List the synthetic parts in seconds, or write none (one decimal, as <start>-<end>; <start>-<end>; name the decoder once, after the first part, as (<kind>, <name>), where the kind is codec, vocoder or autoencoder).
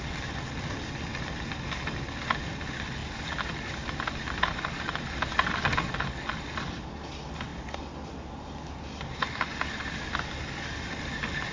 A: none